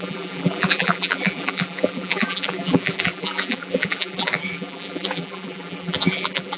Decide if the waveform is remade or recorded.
remade